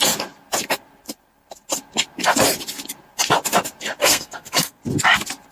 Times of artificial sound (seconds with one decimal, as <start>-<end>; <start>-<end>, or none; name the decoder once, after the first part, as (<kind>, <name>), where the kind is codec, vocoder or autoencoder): 4.0-4.8 (codec, SNAC)